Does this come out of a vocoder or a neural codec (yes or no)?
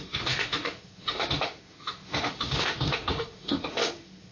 yes